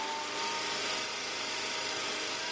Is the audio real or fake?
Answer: fake